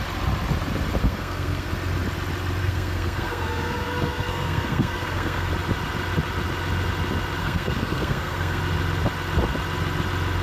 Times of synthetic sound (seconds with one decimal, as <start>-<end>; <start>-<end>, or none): 1.0-1.7; 2.6-5.5; 7.4-8.6